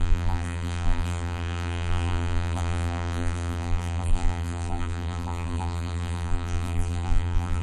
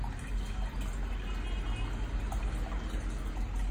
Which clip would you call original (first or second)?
second